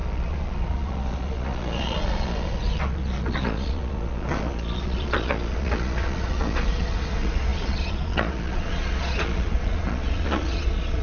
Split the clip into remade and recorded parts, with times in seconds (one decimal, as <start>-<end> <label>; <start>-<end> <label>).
0.0-11.0 remade